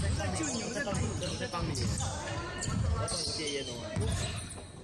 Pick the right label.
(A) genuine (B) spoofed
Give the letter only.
A